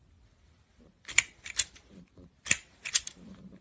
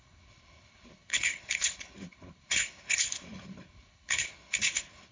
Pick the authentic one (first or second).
first